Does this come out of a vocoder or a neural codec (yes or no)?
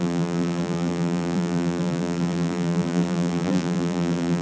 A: yes